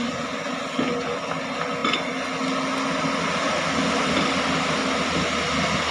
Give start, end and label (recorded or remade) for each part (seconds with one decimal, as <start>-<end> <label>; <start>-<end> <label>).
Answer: 0.0-5.9 recorded